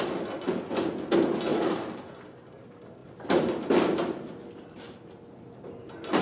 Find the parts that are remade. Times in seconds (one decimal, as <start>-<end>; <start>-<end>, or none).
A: 1.5-2.0